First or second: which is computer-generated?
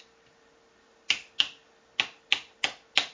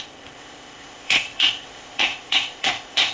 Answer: second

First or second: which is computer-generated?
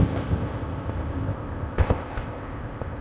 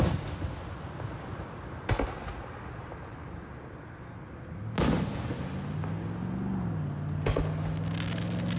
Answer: first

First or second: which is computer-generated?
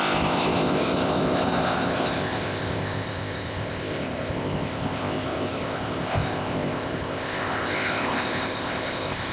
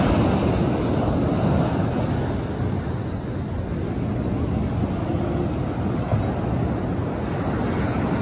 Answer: first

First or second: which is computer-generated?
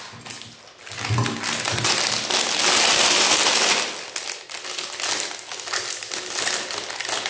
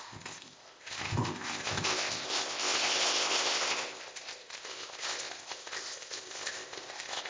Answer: second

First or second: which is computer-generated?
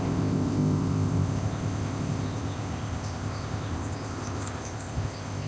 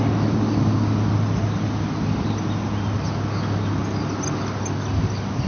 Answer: first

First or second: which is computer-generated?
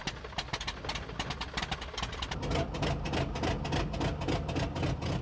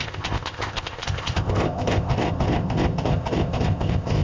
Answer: second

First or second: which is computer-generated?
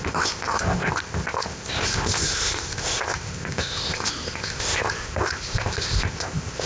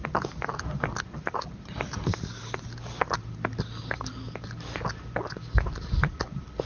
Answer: first